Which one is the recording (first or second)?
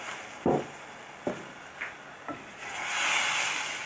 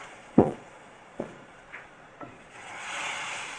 first